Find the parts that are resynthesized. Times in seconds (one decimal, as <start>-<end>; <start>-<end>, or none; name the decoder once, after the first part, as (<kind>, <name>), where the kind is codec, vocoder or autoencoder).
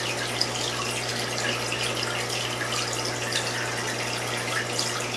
none